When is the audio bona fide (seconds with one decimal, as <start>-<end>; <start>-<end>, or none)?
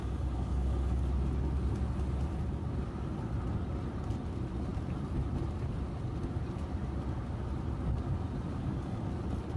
1.1-8.6; 9.1-9.6